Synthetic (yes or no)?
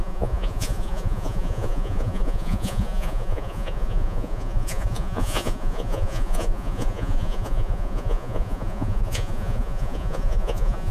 yes